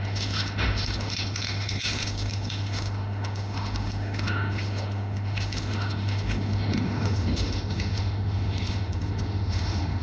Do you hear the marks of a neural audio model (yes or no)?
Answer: yes